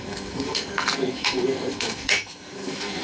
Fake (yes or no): yes